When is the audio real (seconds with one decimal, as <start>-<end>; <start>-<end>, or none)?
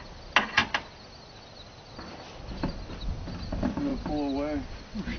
0.0-5.2